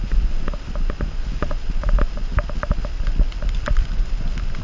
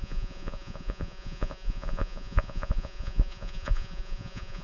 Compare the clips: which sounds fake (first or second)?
second